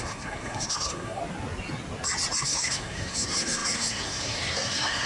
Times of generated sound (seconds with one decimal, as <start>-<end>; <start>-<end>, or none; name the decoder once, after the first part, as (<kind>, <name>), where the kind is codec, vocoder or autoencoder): 0.0-1.2 (codec, SNAC); 2.4-5.1